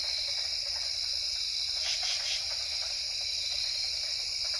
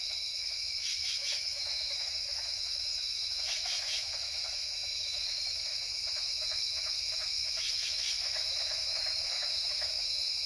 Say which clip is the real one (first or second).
first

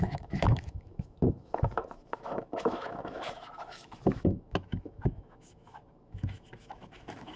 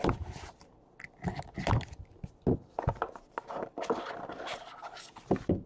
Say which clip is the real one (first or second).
second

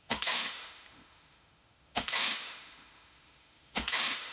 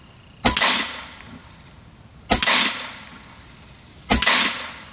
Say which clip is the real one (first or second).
second